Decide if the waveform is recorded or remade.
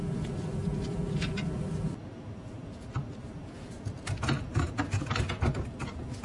recorded